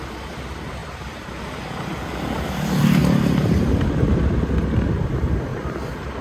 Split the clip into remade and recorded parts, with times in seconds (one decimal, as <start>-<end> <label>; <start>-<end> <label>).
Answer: 0.0-3.0 recorded; 3.0-4.3 remade; 4.3-6.2 recorded

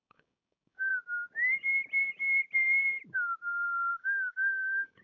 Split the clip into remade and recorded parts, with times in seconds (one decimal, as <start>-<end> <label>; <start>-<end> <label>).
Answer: 0.0-0.9 remade; 0.9-3.9 recorded; 3.9-5.0 remade